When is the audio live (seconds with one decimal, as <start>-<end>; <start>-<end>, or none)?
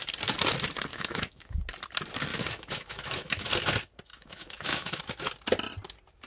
0.0-0.9; 1.6-2.3; 3.5-4.1; 5.0-6.3